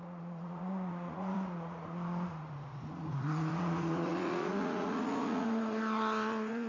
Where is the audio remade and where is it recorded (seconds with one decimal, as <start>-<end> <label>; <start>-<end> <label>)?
0.0-6.7 remade